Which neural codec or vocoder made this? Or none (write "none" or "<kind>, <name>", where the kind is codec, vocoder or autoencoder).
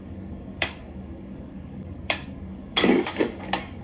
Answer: codec, DAC